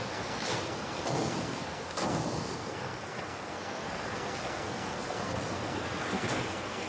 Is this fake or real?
fake